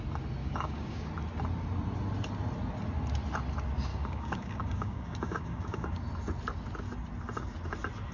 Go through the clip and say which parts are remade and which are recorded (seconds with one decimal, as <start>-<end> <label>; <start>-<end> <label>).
0.0-0.4 recorded; 0.4-1.1 remade; 1.1-3.9 recorded; 3.9-6.0 remade; 6.0-8.1 recorded